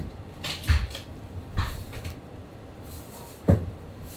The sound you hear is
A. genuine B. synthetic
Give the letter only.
B